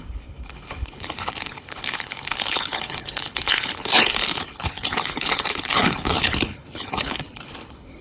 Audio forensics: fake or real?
fake